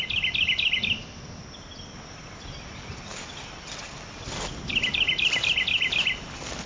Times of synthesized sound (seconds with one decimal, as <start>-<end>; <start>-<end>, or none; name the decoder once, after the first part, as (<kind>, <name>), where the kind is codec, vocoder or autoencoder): 3.1-4.7 (vocoder, BigVGAN v2)